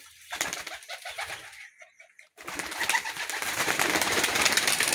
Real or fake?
fake